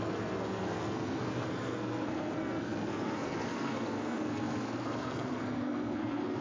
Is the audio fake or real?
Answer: fake